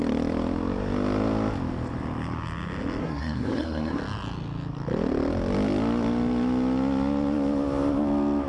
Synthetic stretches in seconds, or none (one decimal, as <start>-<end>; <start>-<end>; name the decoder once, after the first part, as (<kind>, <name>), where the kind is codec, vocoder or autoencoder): 3.0-4.0 (codec, SNAC)